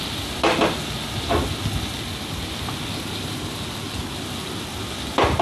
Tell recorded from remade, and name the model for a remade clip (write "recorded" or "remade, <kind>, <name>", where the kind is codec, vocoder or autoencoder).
recorded